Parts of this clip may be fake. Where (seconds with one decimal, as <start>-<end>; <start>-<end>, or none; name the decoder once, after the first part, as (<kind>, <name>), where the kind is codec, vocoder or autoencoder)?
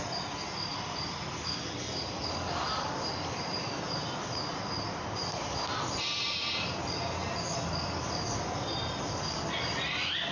0.7-4.5 (vocoder, BigVGAN v2)